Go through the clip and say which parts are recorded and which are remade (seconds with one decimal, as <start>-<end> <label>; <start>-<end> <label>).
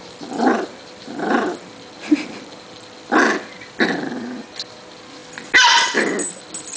0.0-6.8 recorded